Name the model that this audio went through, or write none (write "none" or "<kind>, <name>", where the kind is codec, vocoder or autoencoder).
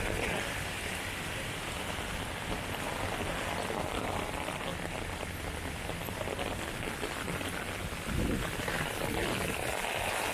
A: none